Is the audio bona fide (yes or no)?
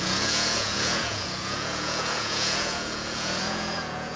no